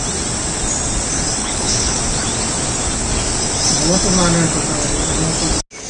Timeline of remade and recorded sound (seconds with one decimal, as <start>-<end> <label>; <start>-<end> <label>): 0.0-1.4 recorded; 1.4-2.0 remade; 2.0-5.9 recorded